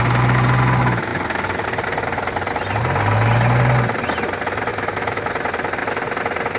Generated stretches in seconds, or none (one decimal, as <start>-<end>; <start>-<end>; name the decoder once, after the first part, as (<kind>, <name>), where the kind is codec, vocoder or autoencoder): 4.7-5.3 (autoencoder, DAC-VAE)

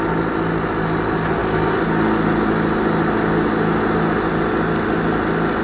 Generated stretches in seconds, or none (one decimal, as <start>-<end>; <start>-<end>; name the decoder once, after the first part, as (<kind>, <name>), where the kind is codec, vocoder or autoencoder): none

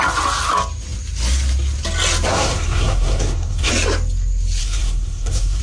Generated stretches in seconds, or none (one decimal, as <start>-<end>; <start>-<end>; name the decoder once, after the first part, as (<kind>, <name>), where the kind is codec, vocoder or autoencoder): 2.3-3.7 (codec, SNAC); 4.6-5.6